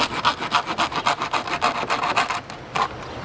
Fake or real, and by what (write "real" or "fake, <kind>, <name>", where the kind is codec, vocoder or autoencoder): real